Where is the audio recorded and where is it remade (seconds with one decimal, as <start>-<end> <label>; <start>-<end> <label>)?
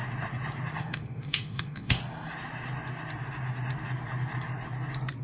0.0-0.8 recorded; 0.8-2.0 remade; 2.0-5.2 recorded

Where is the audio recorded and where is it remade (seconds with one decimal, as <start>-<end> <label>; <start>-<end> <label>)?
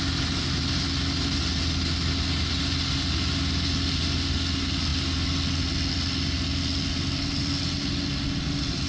0.0-8.9 recorded